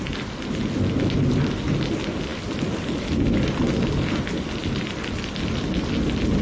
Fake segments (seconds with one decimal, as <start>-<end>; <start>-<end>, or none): none